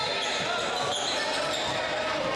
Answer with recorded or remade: recorded